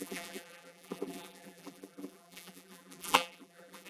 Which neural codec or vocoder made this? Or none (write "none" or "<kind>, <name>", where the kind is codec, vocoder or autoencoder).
vocoder, BigVGAN v2